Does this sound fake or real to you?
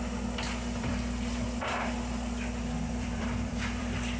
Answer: fake